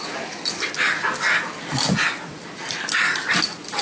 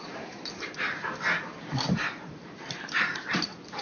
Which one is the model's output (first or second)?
second